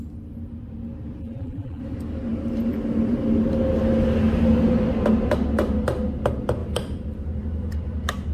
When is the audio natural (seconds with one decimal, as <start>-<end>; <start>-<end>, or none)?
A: 0.0-1.2; 1.8-8.3

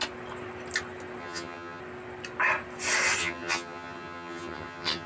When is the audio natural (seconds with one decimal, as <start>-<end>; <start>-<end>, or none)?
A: 0.0-1.2; 1.8-3.2